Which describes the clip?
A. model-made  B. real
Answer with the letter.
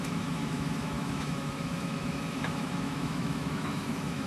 A